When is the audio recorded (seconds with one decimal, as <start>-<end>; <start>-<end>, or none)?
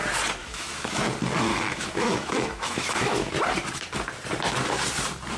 0.0-0.4; 1.0-1.5; 3.3-5.4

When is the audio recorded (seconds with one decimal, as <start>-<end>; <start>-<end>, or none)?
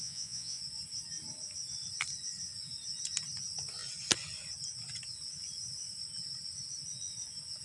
0.6-7.6